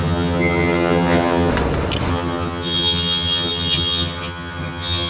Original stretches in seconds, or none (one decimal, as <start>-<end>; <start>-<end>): 1.5-2.1